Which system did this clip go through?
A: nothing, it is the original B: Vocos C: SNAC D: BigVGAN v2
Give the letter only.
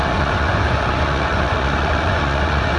B